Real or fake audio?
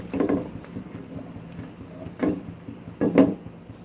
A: real